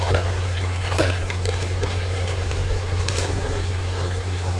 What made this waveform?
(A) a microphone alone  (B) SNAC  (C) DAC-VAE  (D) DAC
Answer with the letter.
B